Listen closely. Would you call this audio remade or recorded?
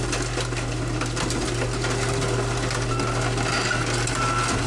recorded